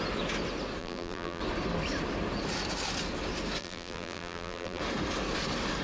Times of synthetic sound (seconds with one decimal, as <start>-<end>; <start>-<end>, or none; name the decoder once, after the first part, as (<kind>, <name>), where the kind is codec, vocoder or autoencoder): 0.8-1.4 (vocoder, BigVGAN v2); 3.6-4.8